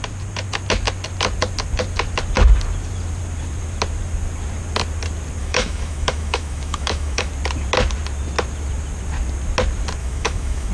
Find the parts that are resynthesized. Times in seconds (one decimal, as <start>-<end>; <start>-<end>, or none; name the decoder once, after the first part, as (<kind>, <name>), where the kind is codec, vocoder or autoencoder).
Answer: 5.4-7.3 (autoencoder, DAC-VAE); 10.0-10.7